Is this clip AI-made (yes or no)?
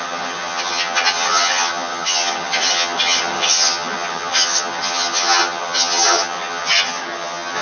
yes